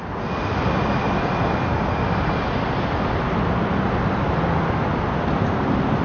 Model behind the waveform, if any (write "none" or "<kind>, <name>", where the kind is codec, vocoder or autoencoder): none